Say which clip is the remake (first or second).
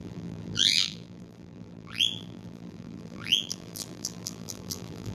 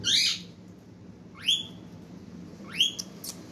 first